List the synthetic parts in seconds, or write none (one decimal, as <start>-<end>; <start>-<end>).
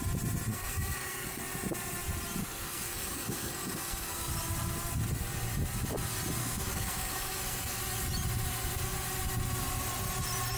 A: 0.5-1.4; 2.4-4.3; 6.4-7.8